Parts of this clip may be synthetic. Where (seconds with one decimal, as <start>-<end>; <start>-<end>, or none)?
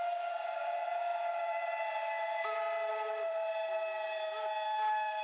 none